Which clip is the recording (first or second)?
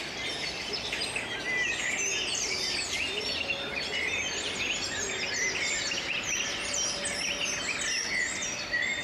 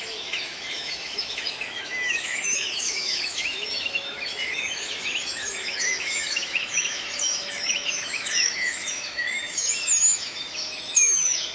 first